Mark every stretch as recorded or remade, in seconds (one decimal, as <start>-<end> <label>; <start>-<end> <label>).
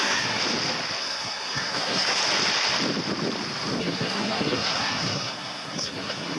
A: 0.0-0.4 remade; 0.4-1.0 recorded; 1.0-2.2 remade; 2.2-3.8 recorded; 3.8-6.4 remade